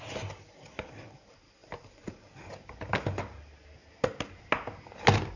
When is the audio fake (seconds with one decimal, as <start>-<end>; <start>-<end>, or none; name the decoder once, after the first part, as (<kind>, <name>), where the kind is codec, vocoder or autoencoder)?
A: none